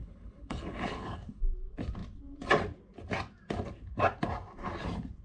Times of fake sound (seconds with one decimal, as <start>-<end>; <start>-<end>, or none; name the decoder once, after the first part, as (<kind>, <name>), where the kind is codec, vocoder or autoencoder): 0.0-1.4 (codec, HILCodec)